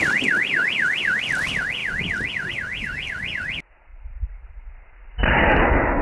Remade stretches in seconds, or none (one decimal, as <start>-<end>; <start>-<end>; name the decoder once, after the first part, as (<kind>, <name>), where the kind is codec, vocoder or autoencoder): 1.8-2.5 (vocoder, BigVGAN v2); 3.9-4.7